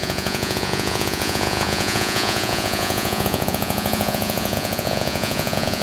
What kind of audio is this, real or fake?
fake